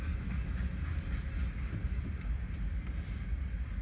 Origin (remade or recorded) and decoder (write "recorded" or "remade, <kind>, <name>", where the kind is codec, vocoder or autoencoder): recorded